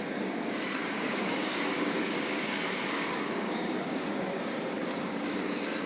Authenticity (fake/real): fake